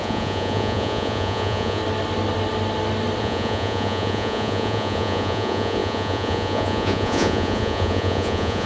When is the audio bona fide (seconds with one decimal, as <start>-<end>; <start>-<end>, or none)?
1.8-3.2